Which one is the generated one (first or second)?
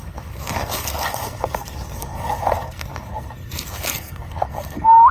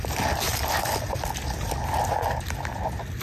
first